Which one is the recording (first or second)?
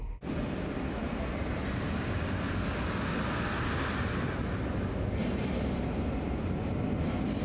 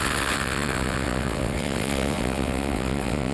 first